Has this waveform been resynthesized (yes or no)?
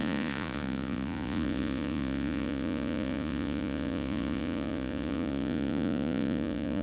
yes